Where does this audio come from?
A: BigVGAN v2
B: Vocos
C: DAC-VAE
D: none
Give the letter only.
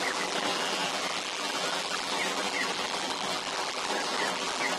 A